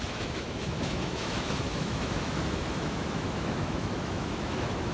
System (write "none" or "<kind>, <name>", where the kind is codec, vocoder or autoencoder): autoencoder, DAC-VAE